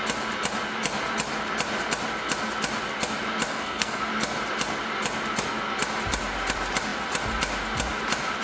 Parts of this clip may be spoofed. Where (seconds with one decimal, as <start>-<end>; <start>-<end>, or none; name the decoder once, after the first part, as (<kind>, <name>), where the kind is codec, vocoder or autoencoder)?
3.5-4.0 (codec, SNAC)